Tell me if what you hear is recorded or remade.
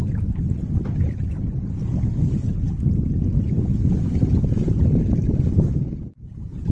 recorded